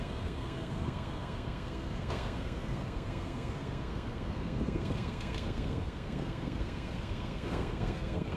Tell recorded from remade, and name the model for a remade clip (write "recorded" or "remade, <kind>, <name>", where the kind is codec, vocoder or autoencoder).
remade, codec, SNAC